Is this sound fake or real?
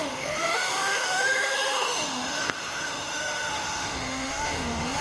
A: fake